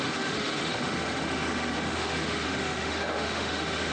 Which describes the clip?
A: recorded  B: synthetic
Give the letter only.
B